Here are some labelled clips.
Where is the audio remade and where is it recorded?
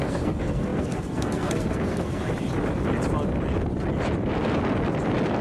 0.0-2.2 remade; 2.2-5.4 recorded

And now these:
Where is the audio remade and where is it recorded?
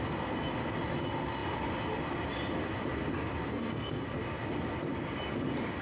0.0-3.5 recorded; 3.5-4.0 remade; 4.0-5.8 recorded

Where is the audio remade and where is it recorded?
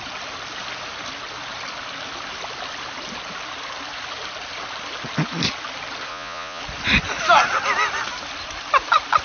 0.0-6.1 recorded; 6.1-6.6 remade; 6.6-9.2 recorded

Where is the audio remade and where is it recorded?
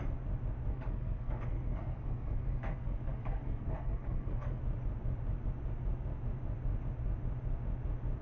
0.0-0.7 recorded; 0.7-4.6 remade; 4.6-8.2 recorded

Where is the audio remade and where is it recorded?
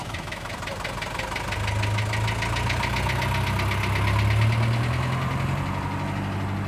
0.0-0.5 remade; 0.5-6.7 recorded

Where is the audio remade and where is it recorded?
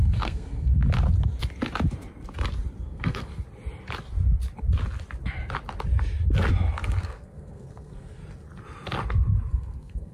0.0-0.8 remade; 0.8-2.8 recorded; 2.8-3.3 remade; 3.3-7.0 recorded; 7.0-8.2 remade; 8.2-9.5 recorded; 9.5-10.1 remade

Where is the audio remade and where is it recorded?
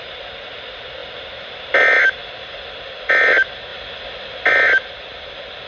0.0-5.7 recorded